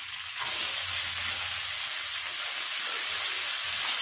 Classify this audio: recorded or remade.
recorded